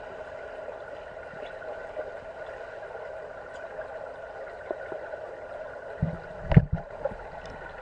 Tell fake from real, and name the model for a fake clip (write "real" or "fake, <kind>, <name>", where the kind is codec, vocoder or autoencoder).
real